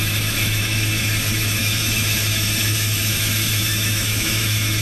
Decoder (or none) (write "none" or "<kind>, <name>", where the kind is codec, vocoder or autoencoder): autoencoder, DAC-VAE